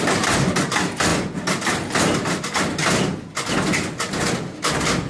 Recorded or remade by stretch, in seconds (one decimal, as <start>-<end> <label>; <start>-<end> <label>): 0.0-5.1 recorded